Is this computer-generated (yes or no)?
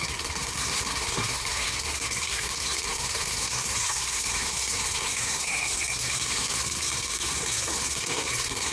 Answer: yes